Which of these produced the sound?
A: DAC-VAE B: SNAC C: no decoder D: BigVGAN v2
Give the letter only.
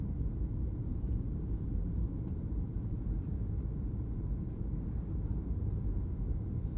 D